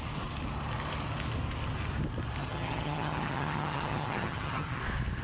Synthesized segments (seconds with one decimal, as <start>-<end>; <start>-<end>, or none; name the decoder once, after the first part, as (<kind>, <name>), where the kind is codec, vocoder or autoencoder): 2.4-4.8 (vocoder, HiFi-GAN)